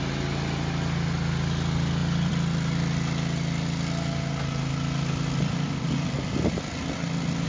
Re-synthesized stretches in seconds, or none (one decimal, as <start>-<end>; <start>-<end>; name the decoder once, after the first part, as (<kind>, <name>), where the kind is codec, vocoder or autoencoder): none